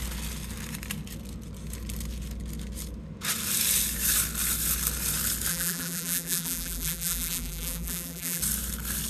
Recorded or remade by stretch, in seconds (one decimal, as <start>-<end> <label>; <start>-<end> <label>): 0.0-5.5 recorded; 5.5-8.4 remade; 8.4-9.1 recorded